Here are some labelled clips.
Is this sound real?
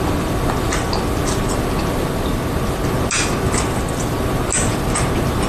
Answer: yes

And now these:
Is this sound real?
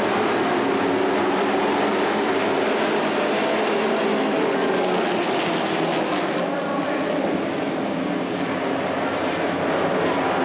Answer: yes